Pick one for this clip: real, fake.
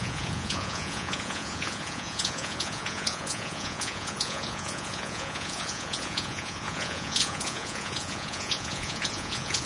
fake